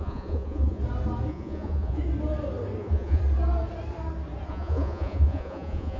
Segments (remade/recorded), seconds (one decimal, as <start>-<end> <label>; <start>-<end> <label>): 0.0-0.8 remade; 0.8-1.3 recorded; 1.3-2.0 remade; 2.0-2.8 recorded; 2.8-3.2 remade; 3.2-4.5 recorded; 4.5-6.0 remade